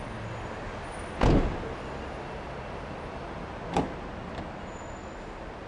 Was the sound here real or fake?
real